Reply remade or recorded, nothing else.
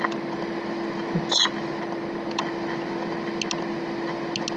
recorded